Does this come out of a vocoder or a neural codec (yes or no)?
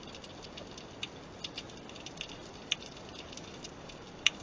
no